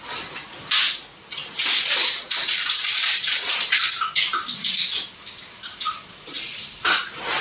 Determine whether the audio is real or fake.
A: real